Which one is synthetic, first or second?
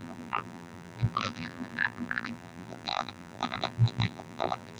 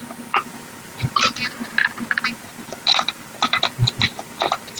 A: first